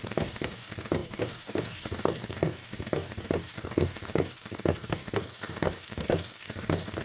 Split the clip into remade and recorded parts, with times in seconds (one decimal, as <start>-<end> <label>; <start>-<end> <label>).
0.0-7.0 remade